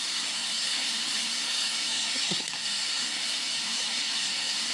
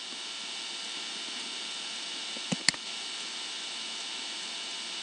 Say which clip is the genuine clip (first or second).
second